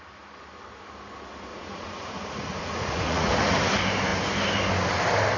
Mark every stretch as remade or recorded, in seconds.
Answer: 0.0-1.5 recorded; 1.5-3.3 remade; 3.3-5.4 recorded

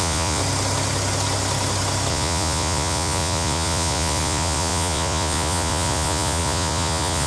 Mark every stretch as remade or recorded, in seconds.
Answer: 0.0-0.4 remade; 0.4-2.1 recorded; 2.1-7.3 remade

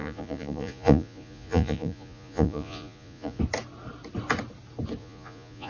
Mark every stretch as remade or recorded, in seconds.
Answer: 0.0-3.4 remade; 3.4-5.0 recorded; 5.0-5.7 remade